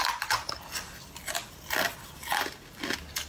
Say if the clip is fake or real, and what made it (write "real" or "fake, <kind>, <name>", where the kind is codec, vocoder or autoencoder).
real